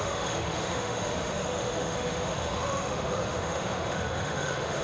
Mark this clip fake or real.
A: fake